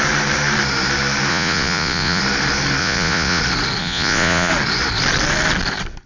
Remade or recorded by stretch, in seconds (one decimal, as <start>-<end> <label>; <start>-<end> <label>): 0.0-1.3 recorded; 1.3-2.2 remade; 2.2-2.8 recorded; 2.8-3.4 remade; 3.4-3.8 recorded; 3.8-4.5 remade; 4.5-6.1 recorded